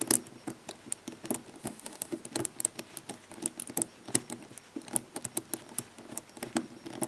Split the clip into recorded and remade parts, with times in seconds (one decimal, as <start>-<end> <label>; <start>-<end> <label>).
0.0-1.6 recorded; 1.6-2.2 remade; 2.2-7.1 recorded